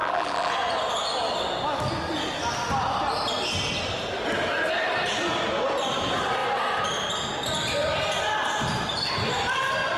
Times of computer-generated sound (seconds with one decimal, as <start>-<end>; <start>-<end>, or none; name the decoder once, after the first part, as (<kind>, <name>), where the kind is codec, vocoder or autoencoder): 0.0-0.5 (vocoder, BigVGAN v2)